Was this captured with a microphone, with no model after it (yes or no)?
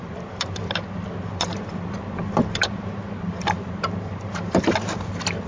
yes